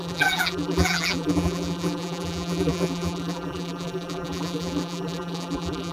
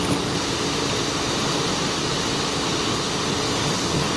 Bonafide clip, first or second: second